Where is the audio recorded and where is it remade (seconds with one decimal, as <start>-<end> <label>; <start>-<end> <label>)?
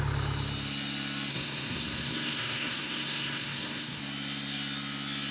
0.0-1.3 recorded; 1.3-4.0 remade; 4.0-5.3 recorded